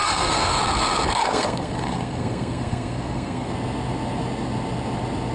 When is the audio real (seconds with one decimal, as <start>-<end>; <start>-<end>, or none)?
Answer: 0.6-1.2; 3.5-5.3